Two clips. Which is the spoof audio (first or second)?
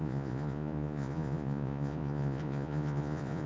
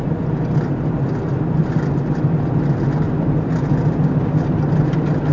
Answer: first